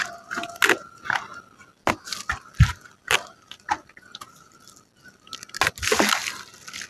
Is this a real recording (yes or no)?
yes